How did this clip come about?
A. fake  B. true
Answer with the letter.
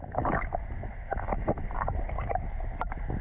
B